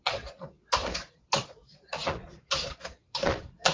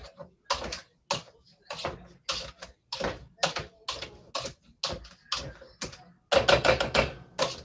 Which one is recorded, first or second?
second